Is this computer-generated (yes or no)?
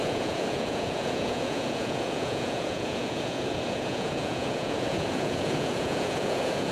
yes